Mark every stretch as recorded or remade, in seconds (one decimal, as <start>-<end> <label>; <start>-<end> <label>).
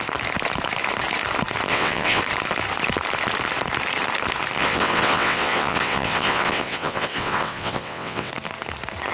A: 0.0-1.7 recorded; 1.7-2.2 remade; 2.2-4.6 recorded; 4.6-8.3 remade; 8.3-9.1 recorded